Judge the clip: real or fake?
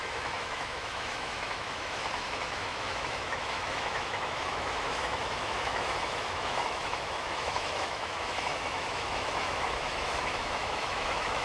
fake